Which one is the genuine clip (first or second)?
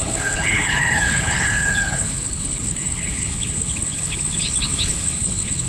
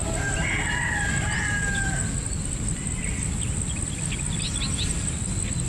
second